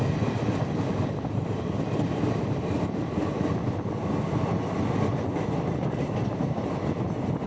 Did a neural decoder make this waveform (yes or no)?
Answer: no